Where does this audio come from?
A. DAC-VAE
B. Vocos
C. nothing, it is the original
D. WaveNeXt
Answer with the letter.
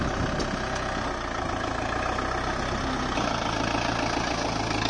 C